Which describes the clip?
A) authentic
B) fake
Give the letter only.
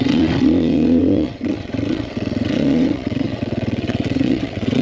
B